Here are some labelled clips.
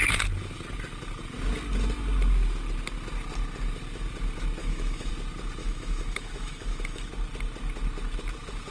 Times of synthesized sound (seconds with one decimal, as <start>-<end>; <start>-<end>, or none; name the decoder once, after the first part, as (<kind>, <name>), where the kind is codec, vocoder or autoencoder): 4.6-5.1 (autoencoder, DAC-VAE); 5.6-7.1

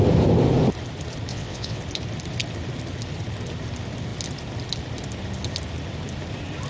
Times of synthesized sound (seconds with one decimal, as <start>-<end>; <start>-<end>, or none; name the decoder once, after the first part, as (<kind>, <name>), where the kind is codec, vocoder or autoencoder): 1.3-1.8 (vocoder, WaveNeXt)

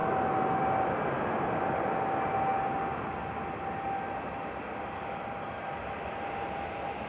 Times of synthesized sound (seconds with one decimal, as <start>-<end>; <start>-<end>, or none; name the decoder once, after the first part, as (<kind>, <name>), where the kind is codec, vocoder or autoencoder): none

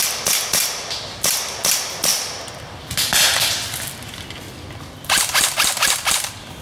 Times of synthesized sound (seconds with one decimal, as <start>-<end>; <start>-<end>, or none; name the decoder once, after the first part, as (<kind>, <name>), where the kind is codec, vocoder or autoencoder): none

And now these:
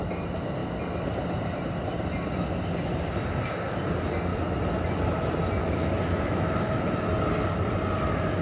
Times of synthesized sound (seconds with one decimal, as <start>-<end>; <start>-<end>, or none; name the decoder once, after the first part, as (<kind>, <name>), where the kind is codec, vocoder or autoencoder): 5.6-7.0 (autoencoder, DAC-VAE)

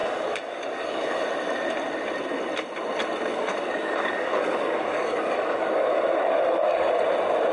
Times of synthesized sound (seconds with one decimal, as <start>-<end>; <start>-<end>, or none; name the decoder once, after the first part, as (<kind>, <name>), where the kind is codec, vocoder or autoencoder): 0.0-1.2 (codec, DAC); 3.3-6.9

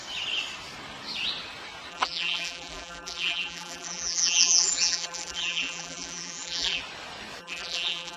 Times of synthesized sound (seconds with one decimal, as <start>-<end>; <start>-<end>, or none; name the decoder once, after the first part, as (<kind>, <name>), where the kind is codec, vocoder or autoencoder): 1.9-6.8 (vocoder, BigVGAN v2); 7.4-8.2

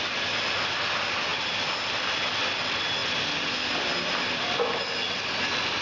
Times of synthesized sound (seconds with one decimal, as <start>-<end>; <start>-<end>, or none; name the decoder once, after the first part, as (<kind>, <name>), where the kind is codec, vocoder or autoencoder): none